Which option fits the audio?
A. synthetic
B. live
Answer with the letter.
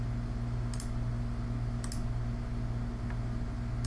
B